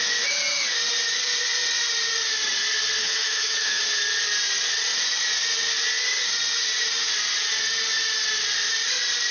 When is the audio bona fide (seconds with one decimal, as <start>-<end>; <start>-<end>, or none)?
0.0-3.0; 3.8-9.3